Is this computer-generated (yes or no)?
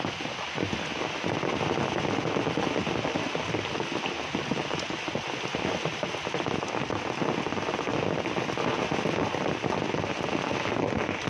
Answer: no